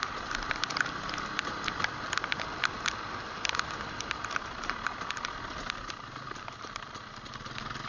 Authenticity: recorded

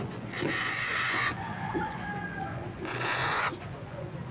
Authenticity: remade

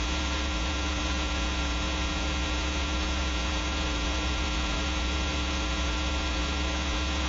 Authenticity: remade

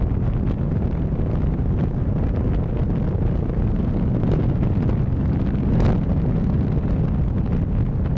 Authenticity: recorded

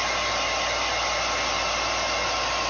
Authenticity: recorded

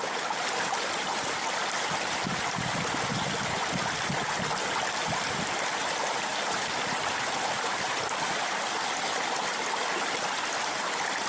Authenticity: recorded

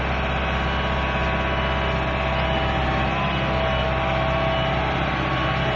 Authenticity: recorded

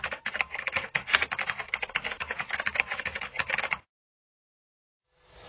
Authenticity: recorded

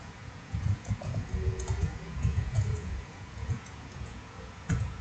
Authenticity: remade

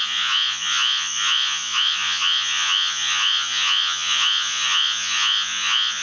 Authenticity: remade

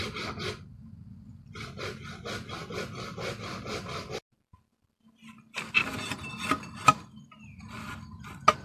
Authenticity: recorded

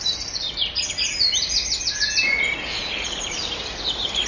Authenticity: recorded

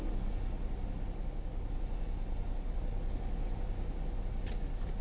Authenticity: recorded